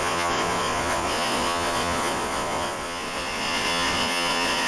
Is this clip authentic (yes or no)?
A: no